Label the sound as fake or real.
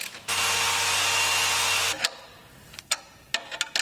real